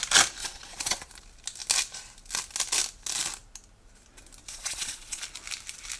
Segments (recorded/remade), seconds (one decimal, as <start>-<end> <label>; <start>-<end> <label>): 0.0-0.4 recorded; 0.4-1.1 remade; 1.1-4.4 recorded; 4.4-5.2 remade; 5.2-6.0 recorded